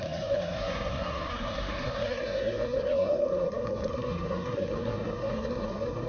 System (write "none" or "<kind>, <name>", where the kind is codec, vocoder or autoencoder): codec, SNAC